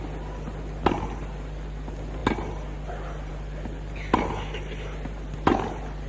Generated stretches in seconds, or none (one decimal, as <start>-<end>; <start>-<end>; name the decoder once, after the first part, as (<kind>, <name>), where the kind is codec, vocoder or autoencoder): none